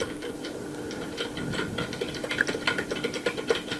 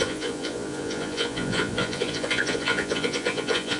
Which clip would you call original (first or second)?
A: first